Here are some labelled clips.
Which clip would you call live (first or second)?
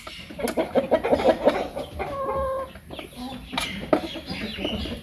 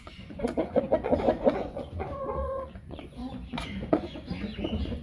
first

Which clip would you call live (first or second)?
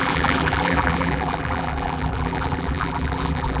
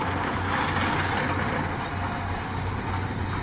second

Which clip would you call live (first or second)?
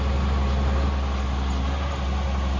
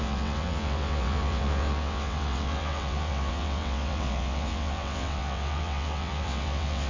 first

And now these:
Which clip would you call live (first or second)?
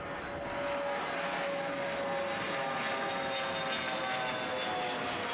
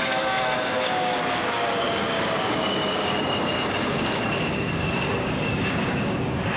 first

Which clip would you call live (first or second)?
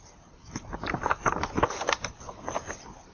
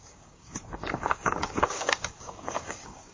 first